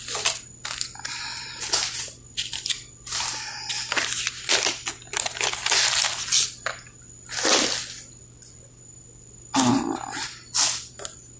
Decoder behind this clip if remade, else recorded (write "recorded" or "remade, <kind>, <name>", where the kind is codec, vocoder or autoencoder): recorded